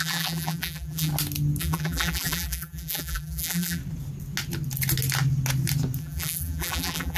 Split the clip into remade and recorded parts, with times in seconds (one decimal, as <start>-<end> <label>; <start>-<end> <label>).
0.0-1.1 remade; 1.1-1.6 recorded; 1.6-3.8 remade; 3.8-6.0 recorded; 6.0-7.2 remade